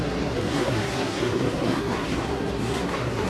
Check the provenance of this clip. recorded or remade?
remade